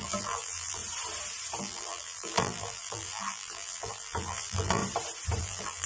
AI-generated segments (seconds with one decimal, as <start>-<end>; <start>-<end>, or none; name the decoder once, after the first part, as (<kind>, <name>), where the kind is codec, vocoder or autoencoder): 0.0-0.8 (vocoder, BigVGAN v2); 1.6-4.8; 5.4-5.9